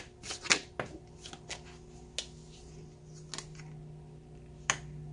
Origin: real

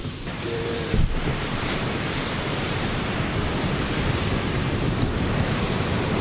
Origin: fake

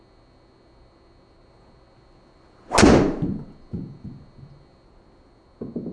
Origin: real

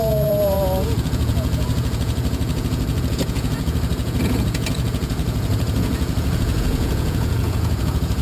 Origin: fake